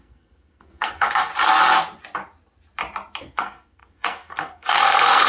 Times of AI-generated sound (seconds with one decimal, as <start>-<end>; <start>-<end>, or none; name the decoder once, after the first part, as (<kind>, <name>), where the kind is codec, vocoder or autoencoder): 0.0-1.3 (codec, SNAC); 3.2-5.3